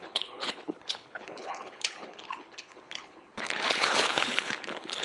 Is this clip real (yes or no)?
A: no